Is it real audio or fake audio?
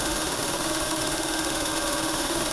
fake